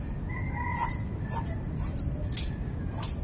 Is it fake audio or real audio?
real